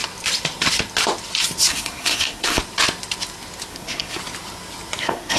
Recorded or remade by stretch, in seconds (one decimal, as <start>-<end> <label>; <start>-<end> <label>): 0.0-1.7 recorded; 1.7-2.6 remade; 2.6-3.7 recorded; 3.7-4.2 remade; 4.2-5.0 recorded; 5.0-5.4 remade